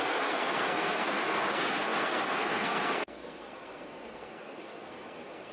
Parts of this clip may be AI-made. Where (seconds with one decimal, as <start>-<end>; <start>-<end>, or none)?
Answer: 0.0-5.5